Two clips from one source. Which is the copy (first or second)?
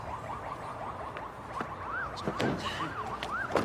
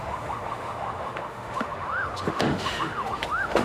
second